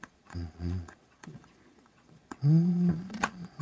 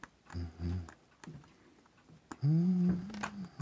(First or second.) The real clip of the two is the second